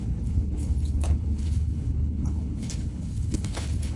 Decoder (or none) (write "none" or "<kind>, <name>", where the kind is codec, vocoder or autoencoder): codec, HILCodec